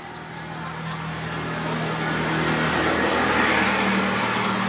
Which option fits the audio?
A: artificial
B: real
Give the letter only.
B